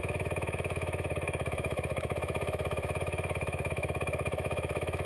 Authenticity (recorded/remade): remade